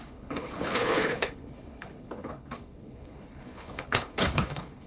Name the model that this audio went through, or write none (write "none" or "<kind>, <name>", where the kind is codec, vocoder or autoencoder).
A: codec, HILCodec